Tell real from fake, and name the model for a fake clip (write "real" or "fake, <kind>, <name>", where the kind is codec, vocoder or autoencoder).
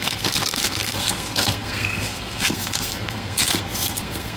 fake, codec, SNAC